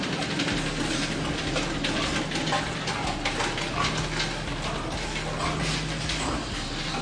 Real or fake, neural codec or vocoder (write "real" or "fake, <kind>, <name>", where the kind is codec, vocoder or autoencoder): real